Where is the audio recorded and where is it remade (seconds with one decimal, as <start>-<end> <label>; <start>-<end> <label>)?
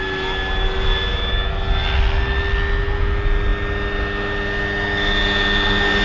0.0-6.0 recorded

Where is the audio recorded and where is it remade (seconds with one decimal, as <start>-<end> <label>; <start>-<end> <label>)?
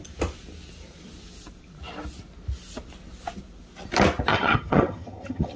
0.0-4.3 recorded; 4.3-5.6 remade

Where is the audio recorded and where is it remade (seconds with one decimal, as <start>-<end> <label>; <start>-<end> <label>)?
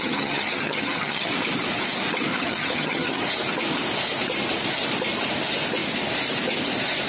0.0-1.3 remade; 1.3-2.3 recorded; 2.3-3.2 remade; 3.2-7.1 recorded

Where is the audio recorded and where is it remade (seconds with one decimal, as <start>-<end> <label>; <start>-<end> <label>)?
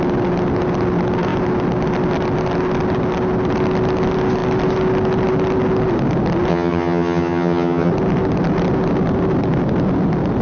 0.0-6.5 recorded; 6.5-7.9 remade; 7.9-10.4 recorded